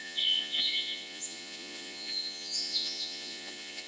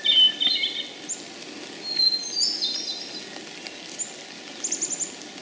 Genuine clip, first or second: second